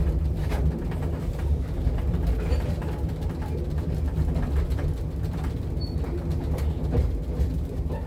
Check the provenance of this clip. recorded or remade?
recorded